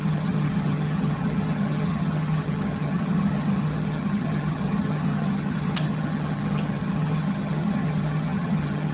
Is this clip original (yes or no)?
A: no